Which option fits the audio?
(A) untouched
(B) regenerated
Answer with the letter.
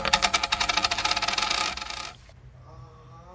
A